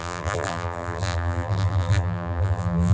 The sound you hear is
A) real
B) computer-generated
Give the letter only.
B